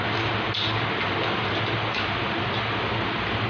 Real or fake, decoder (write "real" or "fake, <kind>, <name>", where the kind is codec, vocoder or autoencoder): real